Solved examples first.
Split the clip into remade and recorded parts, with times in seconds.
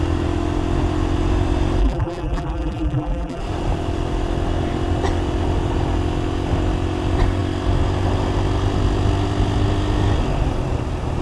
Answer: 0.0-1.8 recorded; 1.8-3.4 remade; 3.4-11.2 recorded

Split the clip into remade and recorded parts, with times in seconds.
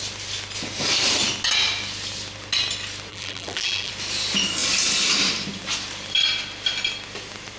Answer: 0.0-3.1 recorded; 3.1-3.9 remade; 3.9-7.6 recorded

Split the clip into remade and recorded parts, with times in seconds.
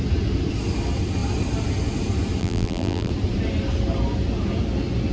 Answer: 0.0-2.4 recorded; 2.4-3.1 remade; 3.1-5.1 recorded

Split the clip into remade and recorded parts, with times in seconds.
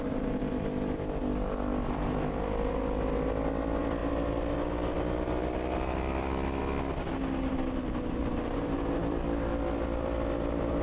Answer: 0.0-4.0 remade; 4.0-4.5 recorded; 4.5-6.6 remade; 6.6-9.0 recorded; 9.0-10.8 remade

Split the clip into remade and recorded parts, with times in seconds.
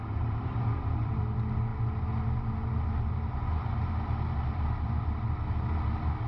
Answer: 0.0-1.2 remade; 1.2-6.3 recorded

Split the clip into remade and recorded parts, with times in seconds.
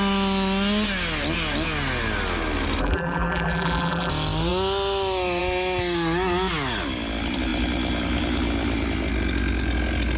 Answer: 0.0-2.8 recorded; 2.8-4.1 remade; 4.1-10.2 recorded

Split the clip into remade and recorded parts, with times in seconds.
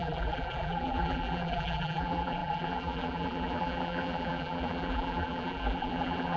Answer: 0.0-6.4 remade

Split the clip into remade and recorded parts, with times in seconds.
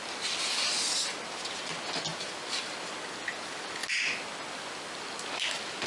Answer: 0.0-2.1 recorded; 2.1-2.9 remade; 2.9-5.9 recorded